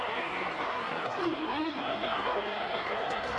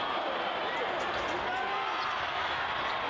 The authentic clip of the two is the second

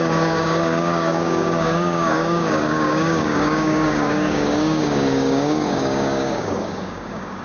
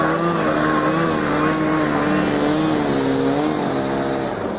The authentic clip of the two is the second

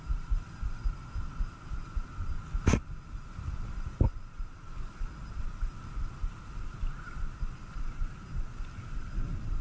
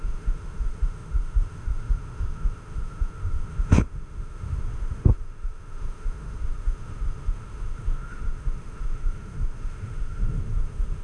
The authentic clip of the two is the first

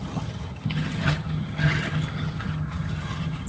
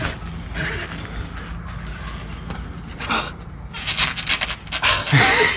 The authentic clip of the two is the second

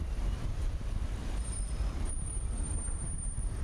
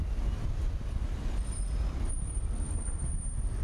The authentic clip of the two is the second